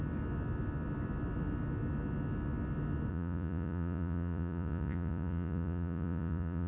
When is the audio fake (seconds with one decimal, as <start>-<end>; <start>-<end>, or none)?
3.1-6.7